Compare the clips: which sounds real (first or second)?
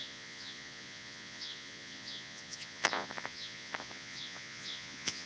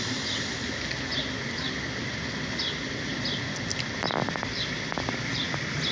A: second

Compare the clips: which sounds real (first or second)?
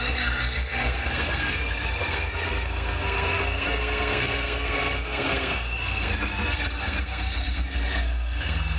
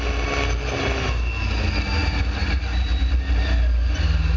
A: second